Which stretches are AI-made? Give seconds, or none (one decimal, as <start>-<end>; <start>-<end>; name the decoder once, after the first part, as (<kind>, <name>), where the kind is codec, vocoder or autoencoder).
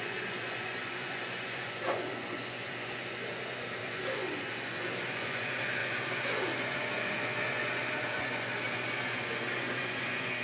0.0-10.4 (vocoder, Vocos)